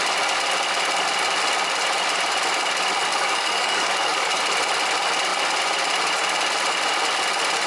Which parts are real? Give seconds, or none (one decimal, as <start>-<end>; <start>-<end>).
0.0-3.1; 4.4-7.7